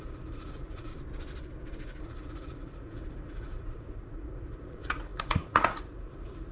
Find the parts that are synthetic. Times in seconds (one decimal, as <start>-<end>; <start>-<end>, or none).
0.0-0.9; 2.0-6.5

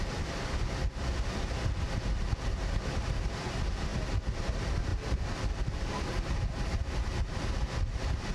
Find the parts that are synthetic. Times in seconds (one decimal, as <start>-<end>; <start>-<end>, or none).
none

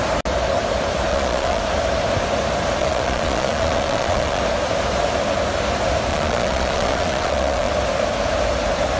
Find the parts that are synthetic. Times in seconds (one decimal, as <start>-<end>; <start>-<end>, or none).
1.1-1.6; 2.8-4.4; 6.1-7.7

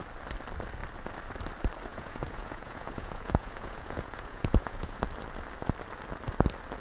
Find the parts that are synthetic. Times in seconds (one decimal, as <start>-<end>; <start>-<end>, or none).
1.9-5.0